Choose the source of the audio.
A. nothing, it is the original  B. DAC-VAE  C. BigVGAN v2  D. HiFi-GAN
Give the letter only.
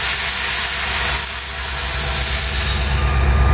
A